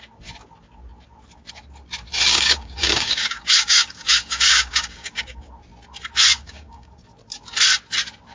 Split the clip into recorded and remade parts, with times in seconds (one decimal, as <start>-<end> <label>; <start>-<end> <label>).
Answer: 0.0-2.3 recorded; 2.3-5.5 remade; 5.5-6.3 recorded; 6.3-6.9 remade; 6.9-8.3 recorded

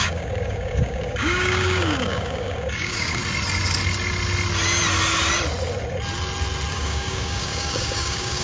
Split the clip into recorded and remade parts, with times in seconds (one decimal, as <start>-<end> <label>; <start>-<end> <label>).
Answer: 0.0-3.2 remade; 3.2-6.7 recorded; 6.7-8.4 remade

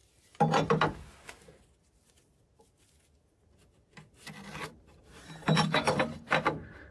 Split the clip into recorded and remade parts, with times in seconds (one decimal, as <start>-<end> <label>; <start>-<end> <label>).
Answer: 0.0-5.4 recorded; 5.4-6.0 remade; 6.0-6.9 recorded

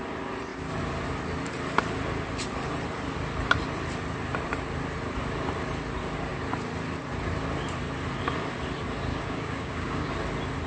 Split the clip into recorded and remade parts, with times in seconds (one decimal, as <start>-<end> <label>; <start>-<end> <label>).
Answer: 0.0-9.1 recorded; 9.1-10.1 remade; 10.1-10.7 recorded